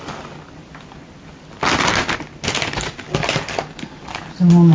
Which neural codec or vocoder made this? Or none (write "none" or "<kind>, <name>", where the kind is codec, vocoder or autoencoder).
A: none